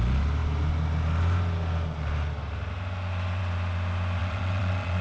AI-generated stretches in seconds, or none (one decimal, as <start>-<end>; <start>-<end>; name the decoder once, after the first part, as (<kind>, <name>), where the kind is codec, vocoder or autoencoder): 4.2-5.0 (vocoder, WaveNeXt)